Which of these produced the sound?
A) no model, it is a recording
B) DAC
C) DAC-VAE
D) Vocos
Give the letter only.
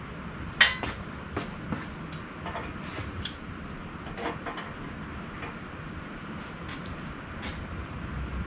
A